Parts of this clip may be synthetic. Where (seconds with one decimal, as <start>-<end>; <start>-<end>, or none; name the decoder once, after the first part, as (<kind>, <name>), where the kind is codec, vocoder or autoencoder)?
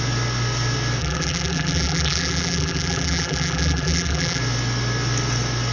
1.0-4.4 (vocoder, BigVGAN v2)